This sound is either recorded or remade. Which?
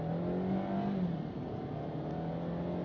recorded